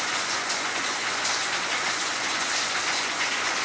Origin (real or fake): fake